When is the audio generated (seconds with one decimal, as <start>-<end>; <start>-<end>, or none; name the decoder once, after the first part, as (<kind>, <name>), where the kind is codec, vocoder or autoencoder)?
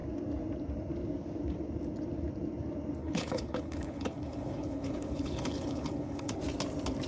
3.0-6.4 (codec, HILCodec)